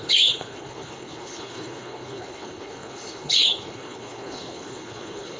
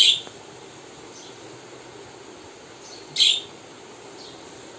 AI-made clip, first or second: first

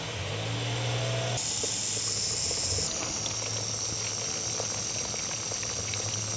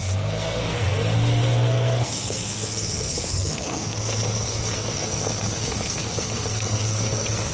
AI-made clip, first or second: second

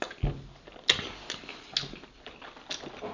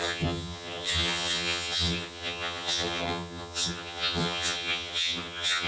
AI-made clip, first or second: second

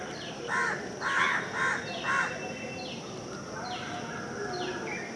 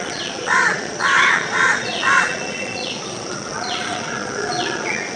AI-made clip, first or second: second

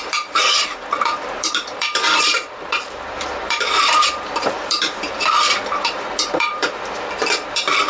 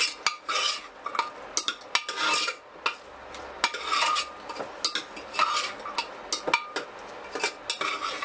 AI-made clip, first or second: first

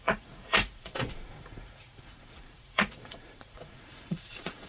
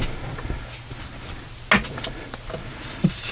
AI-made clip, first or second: first